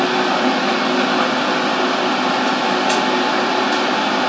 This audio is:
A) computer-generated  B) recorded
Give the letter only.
B